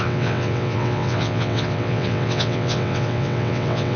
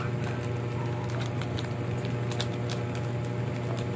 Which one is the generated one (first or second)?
first